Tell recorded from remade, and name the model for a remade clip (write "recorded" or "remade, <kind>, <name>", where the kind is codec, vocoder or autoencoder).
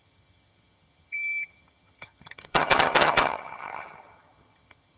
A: remade, vocoder, HiFi-GAN